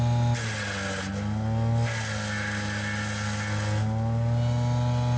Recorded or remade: recorded